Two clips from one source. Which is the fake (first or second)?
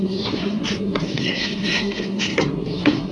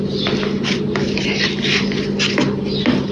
first